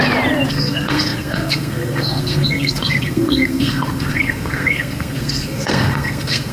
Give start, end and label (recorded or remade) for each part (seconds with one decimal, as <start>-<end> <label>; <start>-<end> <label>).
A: 0.0-0.5 recorded; 0.5-6.5 remade